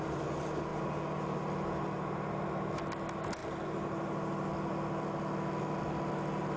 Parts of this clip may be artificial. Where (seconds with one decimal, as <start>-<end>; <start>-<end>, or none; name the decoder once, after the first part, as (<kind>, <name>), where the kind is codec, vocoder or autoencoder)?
none